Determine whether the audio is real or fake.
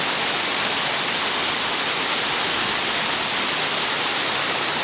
real